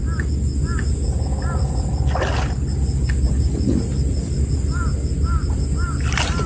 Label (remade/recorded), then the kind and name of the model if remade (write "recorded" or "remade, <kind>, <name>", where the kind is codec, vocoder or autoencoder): recorded